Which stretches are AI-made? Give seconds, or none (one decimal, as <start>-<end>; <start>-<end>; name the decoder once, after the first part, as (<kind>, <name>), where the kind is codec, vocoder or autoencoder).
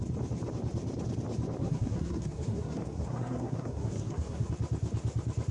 1.6-4.5 (codec, SNAC)